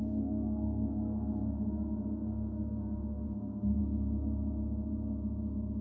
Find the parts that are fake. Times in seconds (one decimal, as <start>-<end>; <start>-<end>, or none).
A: 0.0-3.8